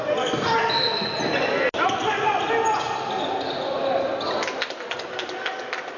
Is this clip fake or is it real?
real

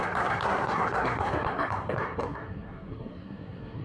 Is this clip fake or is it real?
fake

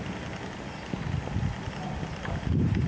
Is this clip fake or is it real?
real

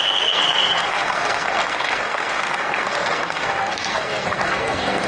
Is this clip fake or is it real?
fake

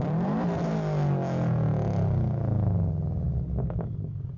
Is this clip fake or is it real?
real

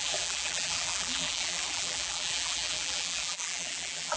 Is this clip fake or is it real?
fake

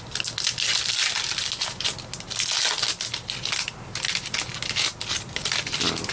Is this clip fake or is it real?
real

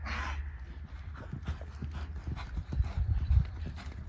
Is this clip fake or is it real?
real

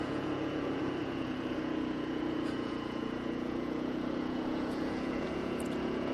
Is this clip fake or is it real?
fake